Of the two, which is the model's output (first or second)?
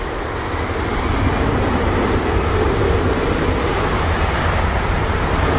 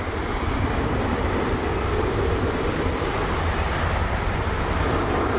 second